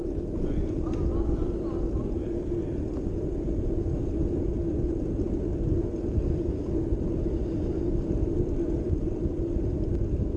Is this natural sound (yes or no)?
yes